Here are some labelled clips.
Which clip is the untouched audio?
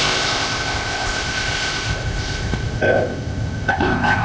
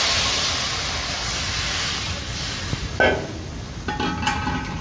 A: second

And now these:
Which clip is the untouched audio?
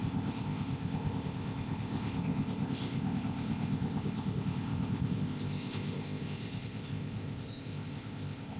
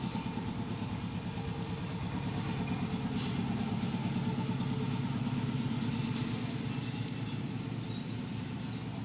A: second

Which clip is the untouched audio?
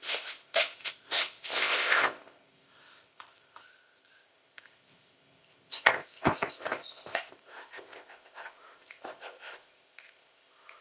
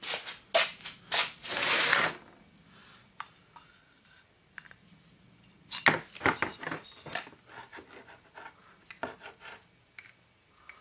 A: second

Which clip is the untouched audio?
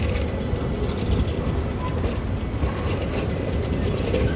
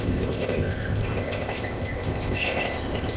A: first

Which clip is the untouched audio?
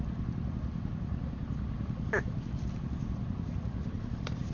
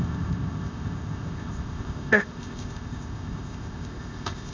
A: first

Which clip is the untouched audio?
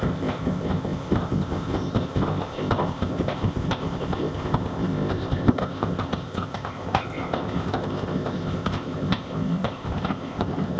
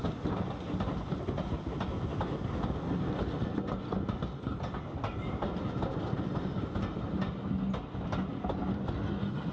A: second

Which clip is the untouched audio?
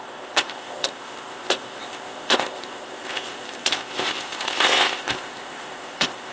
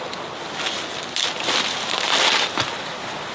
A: second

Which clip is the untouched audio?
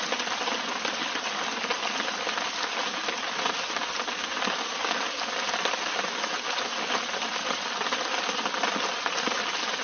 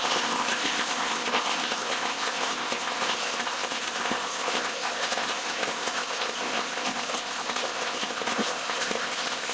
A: first